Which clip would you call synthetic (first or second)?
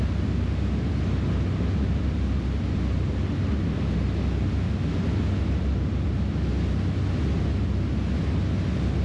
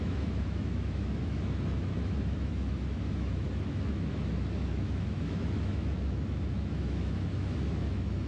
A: second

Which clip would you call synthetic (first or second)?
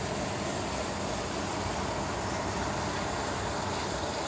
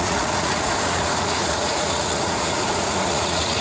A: second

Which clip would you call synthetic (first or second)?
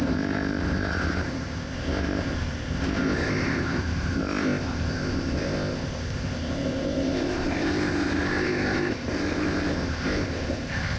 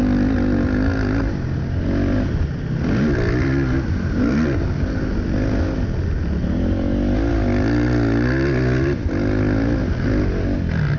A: first